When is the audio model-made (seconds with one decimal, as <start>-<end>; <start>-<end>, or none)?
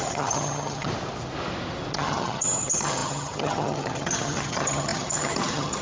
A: 0.0-0.9; 1.9-5.8